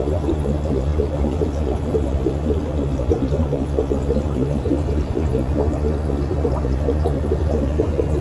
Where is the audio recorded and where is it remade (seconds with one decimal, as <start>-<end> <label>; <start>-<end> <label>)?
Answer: 0.0-8.2 remade